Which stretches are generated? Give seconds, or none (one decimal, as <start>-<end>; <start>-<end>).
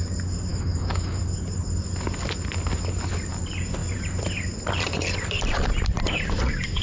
0.5-1.2